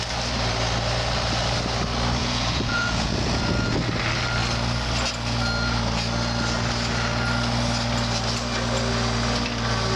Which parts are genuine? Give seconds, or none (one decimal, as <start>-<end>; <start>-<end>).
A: 0.0-2.2; 3.4-10.0